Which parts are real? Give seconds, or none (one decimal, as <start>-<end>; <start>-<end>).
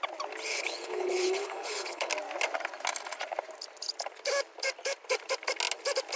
0.0-0.5; 2.1-6.2